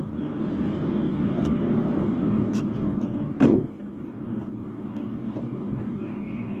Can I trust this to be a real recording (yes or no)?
no